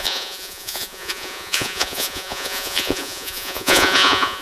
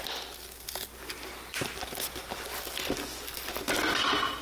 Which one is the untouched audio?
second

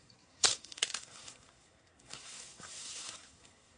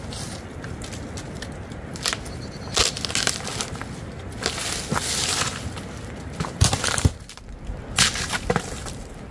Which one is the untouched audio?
second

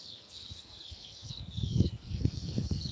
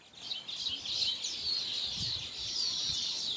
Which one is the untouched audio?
second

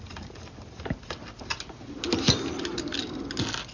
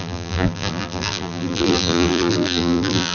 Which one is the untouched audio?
first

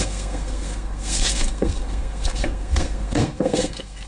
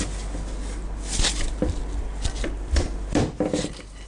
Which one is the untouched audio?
second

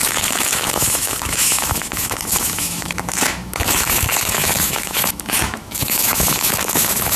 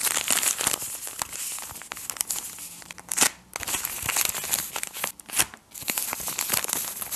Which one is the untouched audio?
second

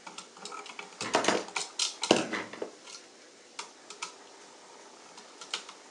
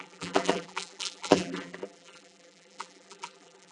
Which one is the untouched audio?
first